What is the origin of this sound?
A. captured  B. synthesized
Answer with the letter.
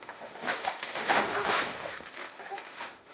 B